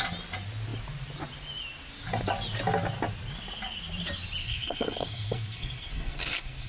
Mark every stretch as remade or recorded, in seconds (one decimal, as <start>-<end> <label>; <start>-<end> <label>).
0.0-4.4 recorded; 4.4-6.7 remade